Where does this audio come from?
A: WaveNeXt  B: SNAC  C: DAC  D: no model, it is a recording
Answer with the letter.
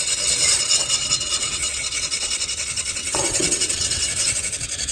A